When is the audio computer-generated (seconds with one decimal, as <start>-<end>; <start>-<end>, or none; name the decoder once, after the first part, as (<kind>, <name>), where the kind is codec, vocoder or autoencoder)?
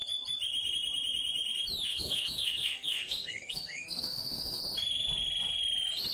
1.9-4.6 (codec, SNAC)